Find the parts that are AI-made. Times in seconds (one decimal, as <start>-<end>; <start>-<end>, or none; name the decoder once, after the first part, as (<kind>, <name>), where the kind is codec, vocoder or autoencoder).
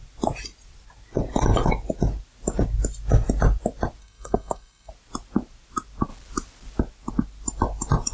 4.0-4.9 (codec, SNAC)